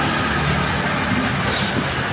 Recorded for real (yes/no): yes